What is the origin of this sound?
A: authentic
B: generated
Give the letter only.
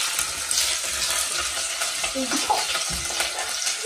A